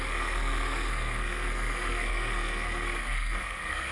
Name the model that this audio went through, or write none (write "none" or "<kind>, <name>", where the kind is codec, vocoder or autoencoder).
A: codec, SNAC